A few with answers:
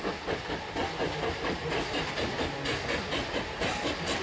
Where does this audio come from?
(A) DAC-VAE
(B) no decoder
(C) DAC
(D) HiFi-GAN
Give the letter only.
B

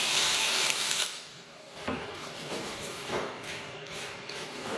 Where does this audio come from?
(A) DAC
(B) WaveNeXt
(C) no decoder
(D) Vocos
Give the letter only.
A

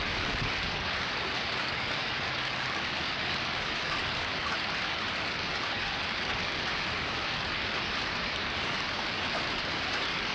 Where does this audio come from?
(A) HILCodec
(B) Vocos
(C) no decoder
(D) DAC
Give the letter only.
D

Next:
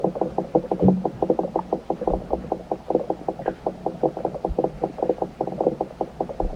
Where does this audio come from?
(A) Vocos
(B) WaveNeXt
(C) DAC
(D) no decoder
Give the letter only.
D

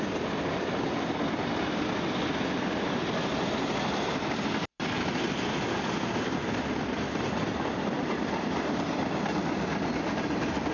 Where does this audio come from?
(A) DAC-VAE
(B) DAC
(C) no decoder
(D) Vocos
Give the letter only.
C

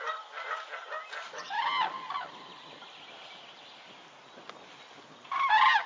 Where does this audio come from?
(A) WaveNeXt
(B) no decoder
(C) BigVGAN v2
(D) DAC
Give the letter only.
B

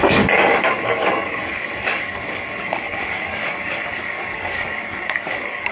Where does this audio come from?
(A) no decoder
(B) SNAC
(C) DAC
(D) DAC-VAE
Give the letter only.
C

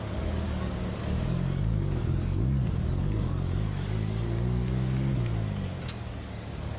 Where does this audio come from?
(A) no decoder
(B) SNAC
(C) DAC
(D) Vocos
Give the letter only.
C